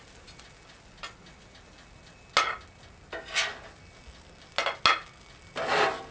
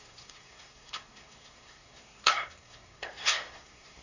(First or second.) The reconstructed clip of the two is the second